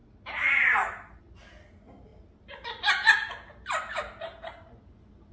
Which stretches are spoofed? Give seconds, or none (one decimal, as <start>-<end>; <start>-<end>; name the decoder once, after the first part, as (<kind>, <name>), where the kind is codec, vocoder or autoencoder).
none